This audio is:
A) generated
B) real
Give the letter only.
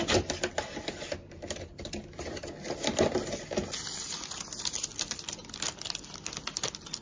B